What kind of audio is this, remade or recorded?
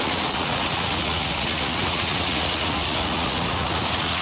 remade